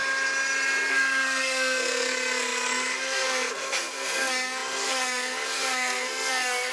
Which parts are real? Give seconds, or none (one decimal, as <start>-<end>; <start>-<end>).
0.0-0.9